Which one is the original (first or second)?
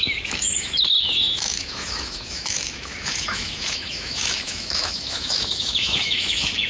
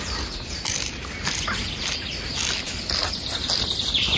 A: second